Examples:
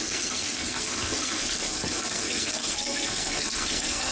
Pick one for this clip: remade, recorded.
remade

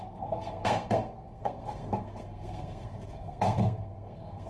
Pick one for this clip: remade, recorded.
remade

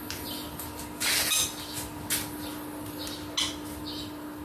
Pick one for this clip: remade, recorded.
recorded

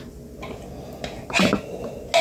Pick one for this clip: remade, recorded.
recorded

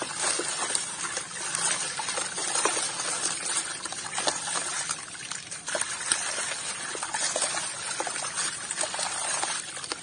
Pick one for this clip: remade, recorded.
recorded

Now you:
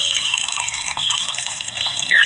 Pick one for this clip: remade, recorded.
remade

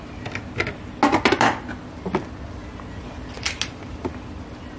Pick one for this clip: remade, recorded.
recorded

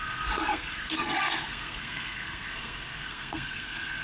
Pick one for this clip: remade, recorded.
remade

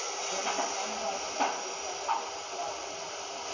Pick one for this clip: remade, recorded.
recorded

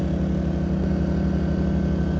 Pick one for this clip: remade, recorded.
recorded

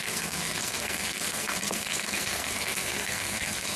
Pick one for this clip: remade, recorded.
remade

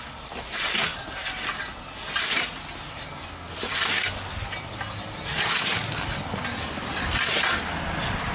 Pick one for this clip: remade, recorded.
recorded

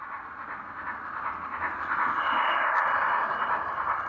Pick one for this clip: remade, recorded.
recorded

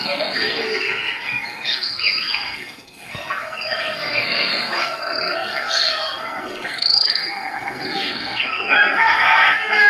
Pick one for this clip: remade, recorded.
remade